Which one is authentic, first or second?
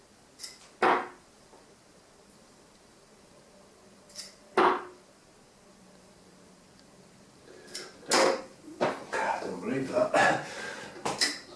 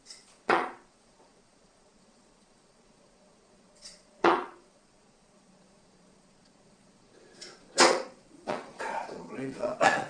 first